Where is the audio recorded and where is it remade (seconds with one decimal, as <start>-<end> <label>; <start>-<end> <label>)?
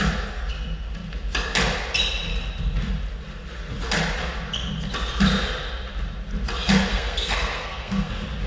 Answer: 0.0-6.9 recorded; 6.9-8.1 remade; 8.1-8.5 recorded